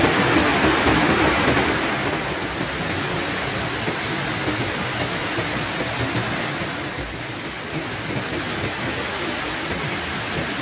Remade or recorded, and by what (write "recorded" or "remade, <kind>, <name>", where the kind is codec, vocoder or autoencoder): recorded